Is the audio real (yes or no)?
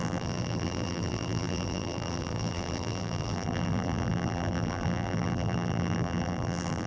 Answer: no